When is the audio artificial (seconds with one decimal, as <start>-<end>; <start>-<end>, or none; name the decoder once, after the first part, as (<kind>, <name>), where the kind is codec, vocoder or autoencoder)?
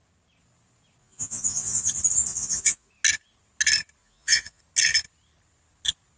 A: 1.0-1.9 (vocoder, Vocos); 2.3-2.9; 4.0-4.6